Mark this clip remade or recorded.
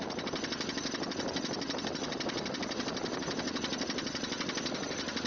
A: recorded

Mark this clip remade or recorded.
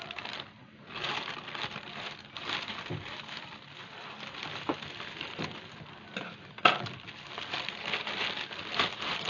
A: recorded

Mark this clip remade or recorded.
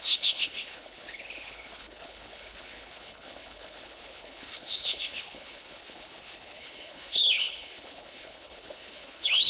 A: remade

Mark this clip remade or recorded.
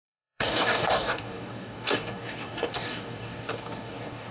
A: remade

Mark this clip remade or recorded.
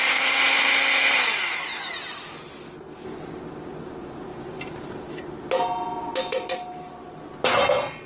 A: recorded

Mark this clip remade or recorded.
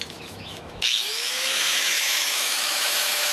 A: remade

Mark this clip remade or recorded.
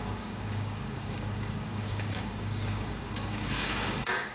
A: remade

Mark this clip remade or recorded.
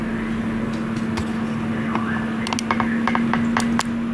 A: recorded